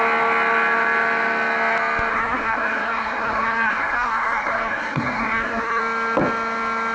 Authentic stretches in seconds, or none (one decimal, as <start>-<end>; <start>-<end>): 0.0-2.1; 5.8-6.9